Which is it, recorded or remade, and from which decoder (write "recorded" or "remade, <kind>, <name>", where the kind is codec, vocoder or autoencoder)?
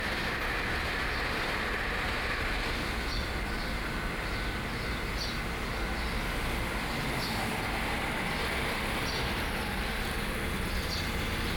recorded